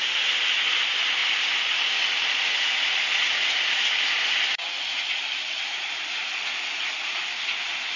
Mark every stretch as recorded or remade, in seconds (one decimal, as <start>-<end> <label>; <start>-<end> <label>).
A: 0.0-8.0 recorded